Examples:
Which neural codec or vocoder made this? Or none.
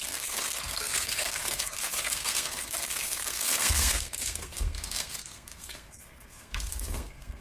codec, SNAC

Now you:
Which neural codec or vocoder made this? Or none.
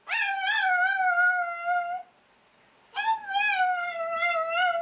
none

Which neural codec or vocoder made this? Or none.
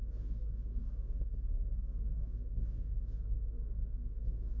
codec, DAC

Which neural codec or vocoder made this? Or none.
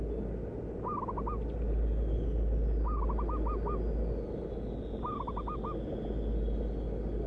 none